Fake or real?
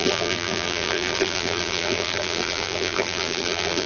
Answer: fake